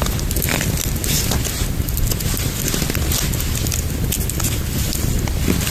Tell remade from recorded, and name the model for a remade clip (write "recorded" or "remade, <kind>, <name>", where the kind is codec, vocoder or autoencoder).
recorded